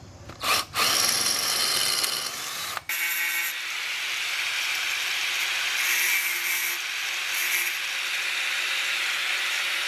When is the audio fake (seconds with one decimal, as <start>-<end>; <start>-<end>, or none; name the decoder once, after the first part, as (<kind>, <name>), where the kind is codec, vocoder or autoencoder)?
none